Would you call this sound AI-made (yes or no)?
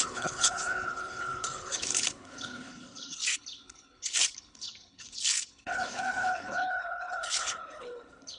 yes